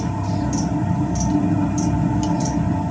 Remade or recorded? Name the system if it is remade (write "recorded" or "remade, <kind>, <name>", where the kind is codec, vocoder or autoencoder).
recorded